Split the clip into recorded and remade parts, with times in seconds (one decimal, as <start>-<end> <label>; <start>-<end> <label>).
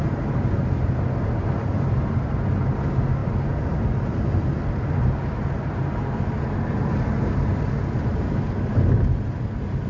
0.0-9.9 recorded